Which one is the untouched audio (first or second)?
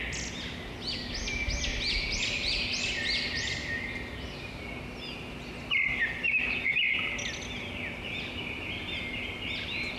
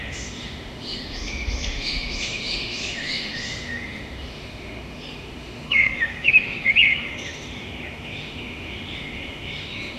first